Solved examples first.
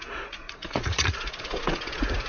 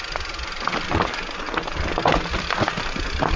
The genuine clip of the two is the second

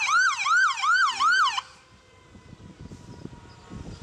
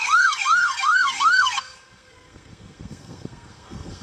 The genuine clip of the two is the first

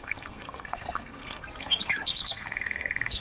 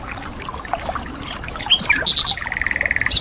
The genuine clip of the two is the second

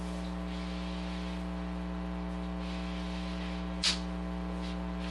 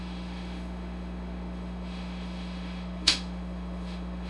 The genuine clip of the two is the first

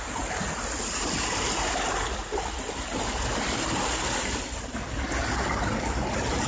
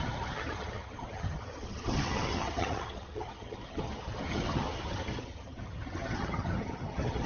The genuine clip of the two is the first